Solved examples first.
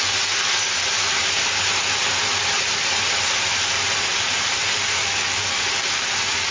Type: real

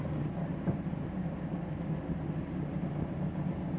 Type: real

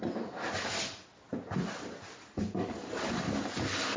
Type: real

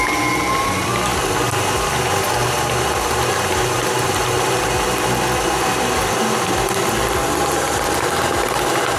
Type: real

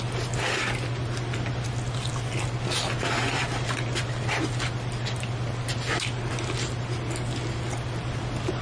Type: real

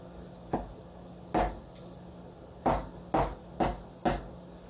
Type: real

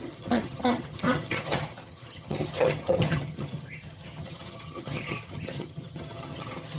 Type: fake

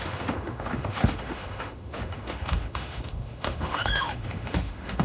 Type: fake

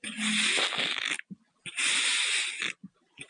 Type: real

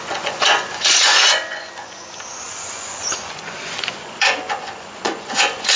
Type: fake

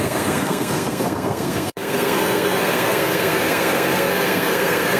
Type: fake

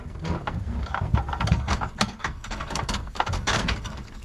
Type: fake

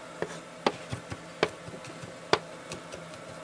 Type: real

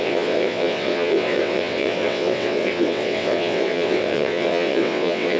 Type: fake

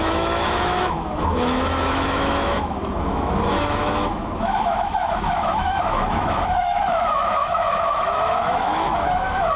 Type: fake